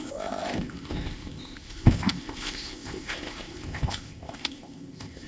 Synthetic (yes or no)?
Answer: yes